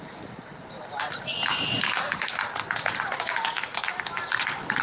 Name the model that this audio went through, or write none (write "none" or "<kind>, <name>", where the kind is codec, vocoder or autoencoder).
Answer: vocoder, BigVGAN v2